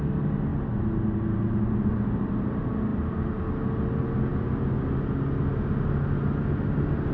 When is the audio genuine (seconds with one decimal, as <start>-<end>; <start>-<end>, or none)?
0.0-7.1